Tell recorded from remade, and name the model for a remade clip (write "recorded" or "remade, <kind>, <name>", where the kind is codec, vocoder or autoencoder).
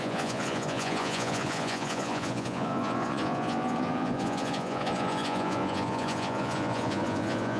remade, vocoder, Vocos